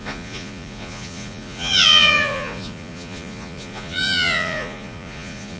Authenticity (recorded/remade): remade